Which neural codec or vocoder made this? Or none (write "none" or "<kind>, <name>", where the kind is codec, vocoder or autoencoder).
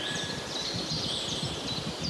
none